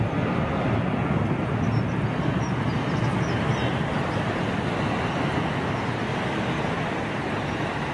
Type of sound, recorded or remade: recorded